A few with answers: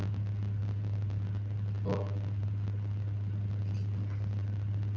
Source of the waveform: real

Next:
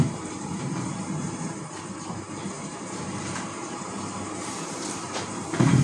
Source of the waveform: fake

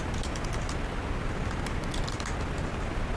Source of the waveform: real